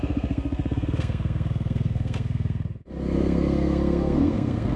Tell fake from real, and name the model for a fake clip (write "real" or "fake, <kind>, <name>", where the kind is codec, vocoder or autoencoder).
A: fake, codec, SNAC